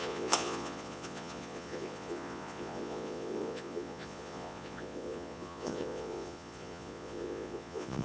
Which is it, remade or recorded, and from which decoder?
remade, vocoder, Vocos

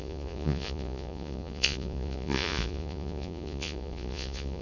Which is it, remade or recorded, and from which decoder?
remade, vocoder, Vocos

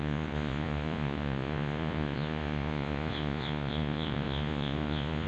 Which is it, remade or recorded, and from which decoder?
remade, vocoder, Vocos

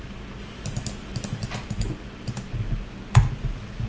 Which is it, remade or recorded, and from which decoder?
recorded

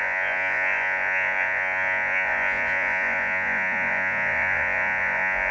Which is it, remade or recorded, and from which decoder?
remade, vocoder, Vocos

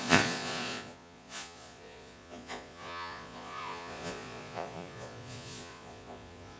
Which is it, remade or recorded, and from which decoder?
remade, vocoder, Vocos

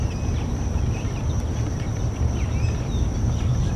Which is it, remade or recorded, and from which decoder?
recorded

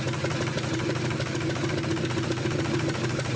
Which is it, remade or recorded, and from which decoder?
recorded